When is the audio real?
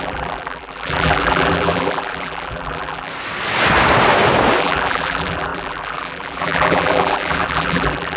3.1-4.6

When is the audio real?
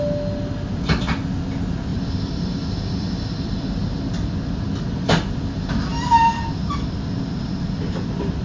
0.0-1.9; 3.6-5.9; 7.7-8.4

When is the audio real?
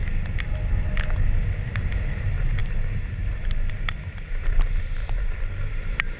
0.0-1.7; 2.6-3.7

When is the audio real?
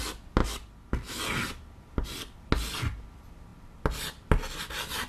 0.0-5.1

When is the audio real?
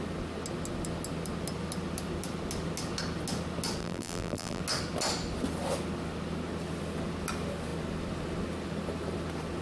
0.0-3.8; 4.6-9.6